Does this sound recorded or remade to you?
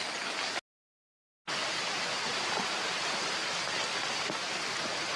recorded